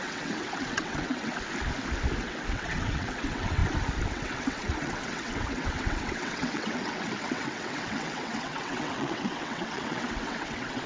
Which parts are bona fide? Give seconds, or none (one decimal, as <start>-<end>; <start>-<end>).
1.3-2.2; 3.6-4.1